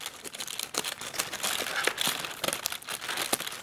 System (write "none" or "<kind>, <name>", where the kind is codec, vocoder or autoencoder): none